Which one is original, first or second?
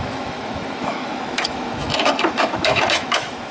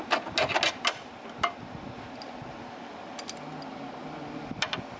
second